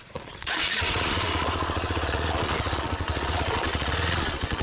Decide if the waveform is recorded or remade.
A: remade